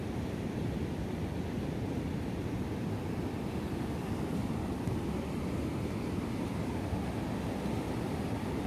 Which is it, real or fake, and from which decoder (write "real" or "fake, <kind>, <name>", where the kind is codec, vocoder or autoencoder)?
real